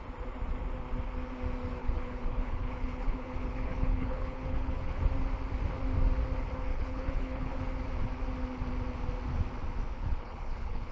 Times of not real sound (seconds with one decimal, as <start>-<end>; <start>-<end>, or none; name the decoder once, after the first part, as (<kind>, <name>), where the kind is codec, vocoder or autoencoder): 1.8-5.0 (codec, HILCodec); 6.7-7.6; 9.9-10.9